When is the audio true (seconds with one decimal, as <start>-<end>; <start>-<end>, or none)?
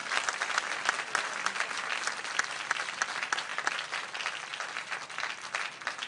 0.0-6.1